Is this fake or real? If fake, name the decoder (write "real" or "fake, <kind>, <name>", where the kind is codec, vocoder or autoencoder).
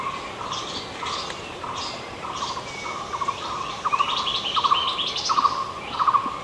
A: real